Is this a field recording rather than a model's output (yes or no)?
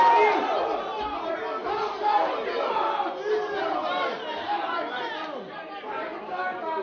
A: yes